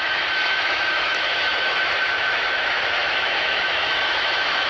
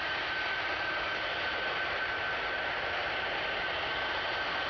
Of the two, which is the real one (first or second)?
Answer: second